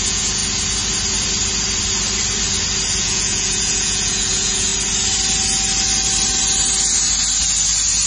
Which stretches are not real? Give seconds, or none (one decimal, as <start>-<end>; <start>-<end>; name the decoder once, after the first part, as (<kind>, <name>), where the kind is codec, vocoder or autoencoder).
0.0-0.4 (vocoder, Vocos); 3.0-4.7